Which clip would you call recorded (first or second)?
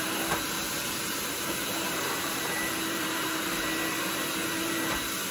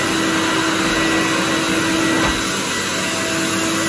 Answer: second